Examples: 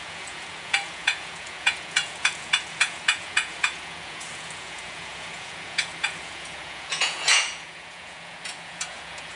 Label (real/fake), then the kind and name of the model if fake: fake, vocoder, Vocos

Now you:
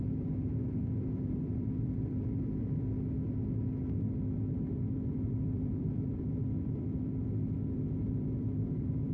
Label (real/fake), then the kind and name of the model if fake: fake, vocoder, BigVGAN v2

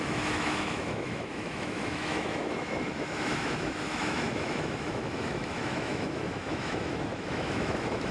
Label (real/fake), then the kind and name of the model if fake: fake, autoencoder, DAC-VAE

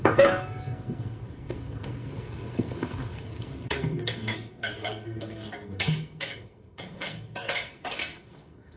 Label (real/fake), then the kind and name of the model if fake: fake, codec, SNAC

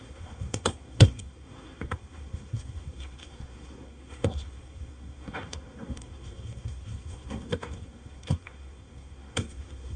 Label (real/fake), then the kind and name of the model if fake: fake, codec, SNAC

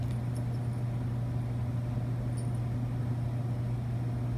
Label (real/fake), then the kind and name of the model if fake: real